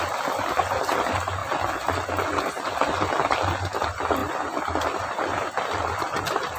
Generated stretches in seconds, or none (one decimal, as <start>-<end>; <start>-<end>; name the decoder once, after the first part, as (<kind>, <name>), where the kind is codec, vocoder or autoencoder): none